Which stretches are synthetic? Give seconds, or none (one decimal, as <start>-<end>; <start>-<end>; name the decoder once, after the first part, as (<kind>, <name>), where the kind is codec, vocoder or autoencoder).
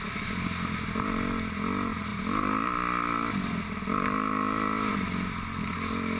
none